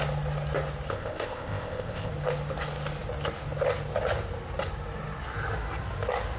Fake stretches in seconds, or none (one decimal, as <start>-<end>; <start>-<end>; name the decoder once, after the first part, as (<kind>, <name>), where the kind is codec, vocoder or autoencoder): 0.9-2.1 (codec, ZipCodec)